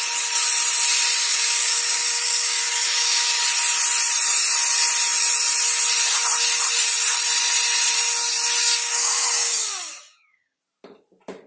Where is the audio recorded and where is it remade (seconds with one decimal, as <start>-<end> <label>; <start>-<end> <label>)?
0.0-1.3 recorded; 1.3-3.4 remade; 3.4-8.6 recorded; 8.6-10.6 remade; 10.6-11.5 recorded